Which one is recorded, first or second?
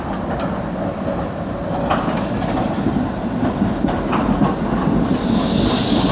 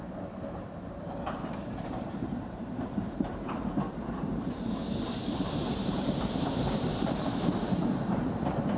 first